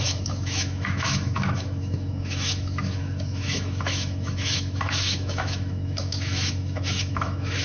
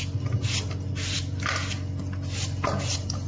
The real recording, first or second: second